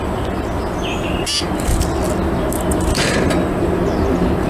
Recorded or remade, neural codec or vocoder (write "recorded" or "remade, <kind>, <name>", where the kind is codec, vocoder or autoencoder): recorded